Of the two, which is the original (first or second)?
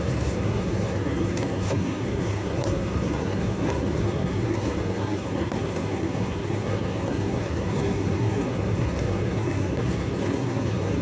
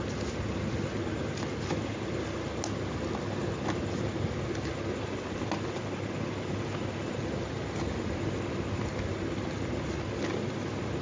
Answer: second